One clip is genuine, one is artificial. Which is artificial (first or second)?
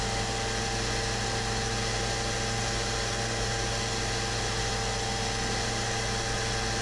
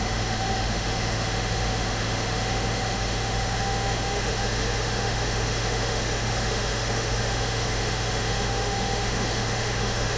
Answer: second